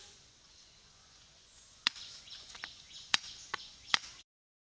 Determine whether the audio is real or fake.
fake